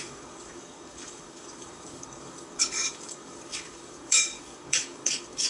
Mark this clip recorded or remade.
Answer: remade